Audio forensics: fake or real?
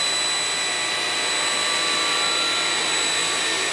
real